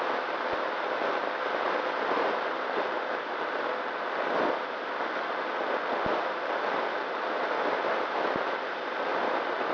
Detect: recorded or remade recorded